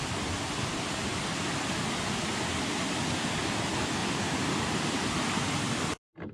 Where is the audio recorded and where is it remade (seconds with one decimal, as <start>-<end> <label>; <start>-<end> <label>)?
0.0-4.0 recorded; 4.0-4.7 remade; 4.7-6.3 recorded